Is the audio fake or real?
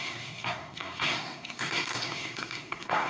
fake